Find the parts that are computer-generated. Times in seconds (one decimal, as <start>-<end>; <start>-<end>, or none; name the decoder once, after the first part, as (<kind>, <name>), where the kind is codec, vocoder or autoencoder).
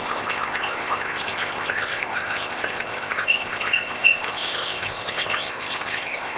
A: 0.0-6.4 (codec, ZipCodec)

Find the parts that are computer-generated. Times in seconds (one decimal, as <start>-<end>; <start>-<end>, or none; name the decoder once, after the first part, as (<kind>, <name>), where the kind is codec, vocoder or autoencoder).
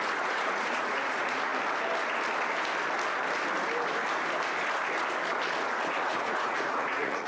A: 0.0-1.5 (vocoder, Vocos); 5.9-7.3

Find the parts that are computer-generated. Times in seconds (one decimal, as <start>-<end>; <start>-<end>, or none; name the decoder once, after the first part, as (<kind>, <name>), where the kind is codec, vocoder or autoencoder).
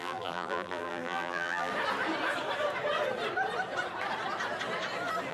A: 0.0-1.7 (vocoder, BigVGAN v2)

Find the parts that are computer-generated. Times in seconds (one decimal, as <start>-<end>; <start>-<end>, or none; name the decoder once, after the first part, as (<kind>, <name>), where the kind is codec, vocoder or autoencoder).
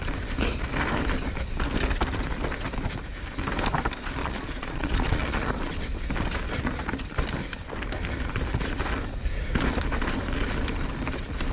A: 4.2-5.5 (vocoder, Vocos)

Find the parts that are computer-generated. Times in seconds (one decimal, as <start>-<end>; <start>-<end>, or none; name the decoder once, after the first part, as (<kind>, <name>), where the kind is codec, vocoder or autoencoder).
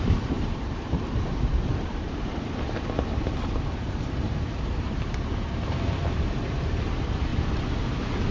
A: 0.0-2.3 (vocoder, BigVGAN v2); 4.2-7.3; 7.8-8.3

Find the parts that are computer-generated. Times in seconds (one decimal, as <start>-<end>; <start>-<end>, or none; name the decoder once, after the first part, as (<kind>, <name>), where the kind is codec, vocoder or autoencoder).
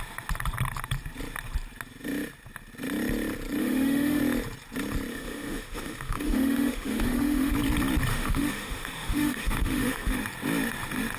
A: 3.6-4.2 (autoencoder, DAC-VAE); 5.1-7.5; 8.1-10.2